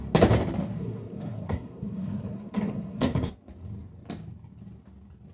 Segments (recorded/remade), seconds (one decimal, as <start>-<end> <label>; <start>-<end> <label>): 0.0-0.8 recorded; 0.8-3.3 remade; 3.3-5.3 recorded